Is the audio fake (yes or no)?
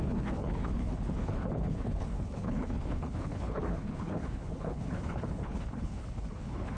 yes